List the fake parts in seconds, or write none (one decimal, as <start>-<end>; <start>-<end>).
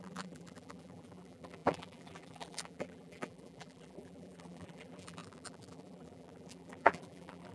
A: 0.0-7.5